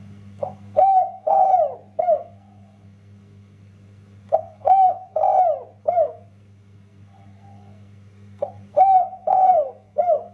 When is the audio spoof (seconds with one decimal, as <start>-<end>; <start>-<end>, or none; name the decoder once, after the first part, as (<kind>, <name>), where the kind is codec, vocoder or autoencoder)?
0.0-1.5 (codec, SNAC); 2.0-5.2; 5.8-10.3